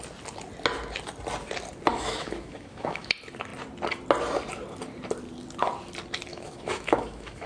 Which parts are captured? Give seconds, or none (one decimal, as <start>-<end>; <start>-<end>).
0.0-1.9; 3.1-6.3